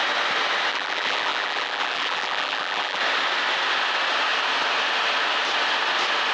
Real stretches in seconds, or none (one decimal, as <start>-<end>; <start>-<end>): 0.0-0.7; 3.0-6.3